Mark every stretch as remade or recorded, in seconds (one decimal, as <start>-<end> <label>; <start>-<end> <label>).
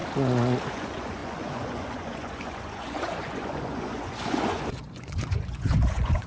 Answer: 0.0-0.7 recorded; 0.7-6.3 remade